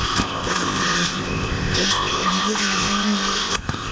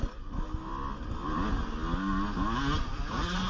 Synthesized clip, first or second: first